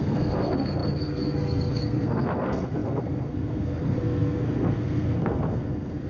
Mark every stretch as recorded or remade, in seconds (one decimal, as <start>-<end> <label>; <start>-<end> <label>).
0.0-6.1 remade